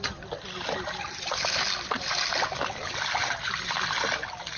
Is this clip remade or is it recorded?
recorded